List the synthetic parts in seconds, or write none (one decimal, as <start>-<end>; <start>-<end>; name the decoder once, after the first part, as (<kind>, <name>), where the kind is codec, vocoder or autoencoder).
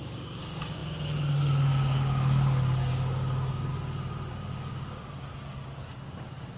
0.0-3.7 (codec, DAC); 4.3-6.6